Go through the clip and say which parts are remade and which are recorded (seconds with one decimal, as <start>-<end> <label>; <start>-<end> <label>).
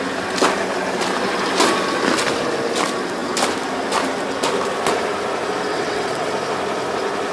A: 0.0-5.7 recorded; 5.7-6.3 remade; 6.3-7.3 recorded